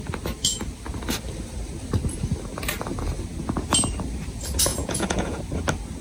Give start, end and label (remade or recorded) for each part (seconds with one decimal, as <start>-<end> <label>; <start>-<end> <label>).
0.0-4.7 recorded; 4.7-5.4 remade; 5.4-6.0 recorded